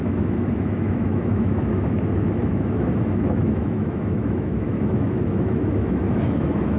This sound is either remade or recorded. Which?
remade